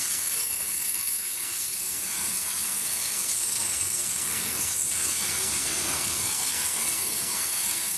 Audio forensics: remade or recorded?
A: remade